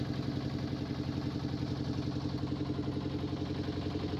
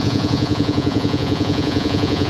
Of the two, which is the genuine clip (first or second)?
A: first